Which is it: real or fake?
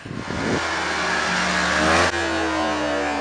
real